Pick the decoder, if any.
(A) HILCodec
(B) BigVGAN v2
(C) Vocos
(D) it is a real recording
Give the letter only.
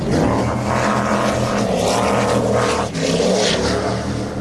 D